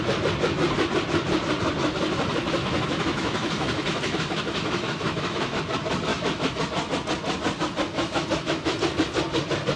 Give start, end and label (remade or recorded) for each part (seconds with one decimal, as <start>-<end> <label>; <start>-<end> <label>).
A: 0.0-2.6 recorded; 2.6-5.6 remade; 5.6-6.1 recorded; 6.1-6.6 remade; 6.6-7.9 recorded; 7.9-8.8 remade; 8.8-9.8 recorded